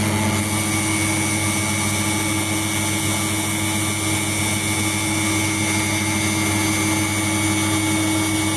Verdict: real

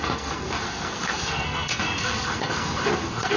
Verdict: fake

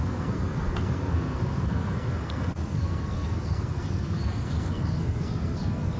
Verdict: fake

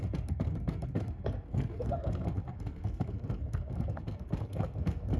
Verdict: fake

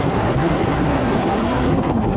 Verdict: fake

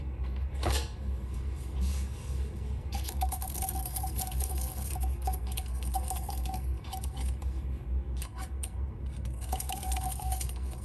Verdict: fake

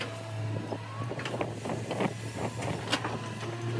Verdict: real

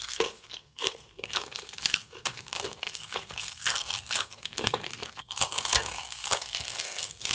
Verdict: fake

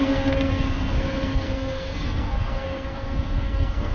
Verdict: fake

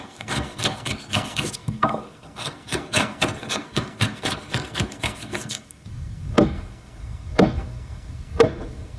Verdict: fake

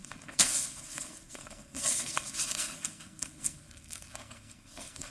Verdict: fake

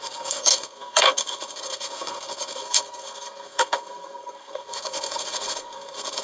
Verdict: fake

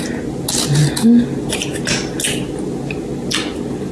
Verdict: real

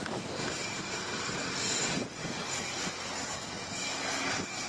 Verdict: real